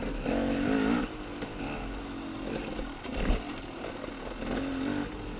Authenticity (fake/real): real